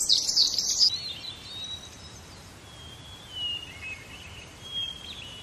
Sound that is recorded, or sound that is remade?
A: recorded